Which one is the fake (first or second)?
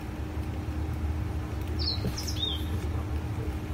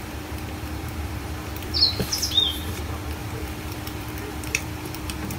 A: second